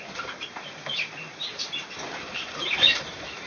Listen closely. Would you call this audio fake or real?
fake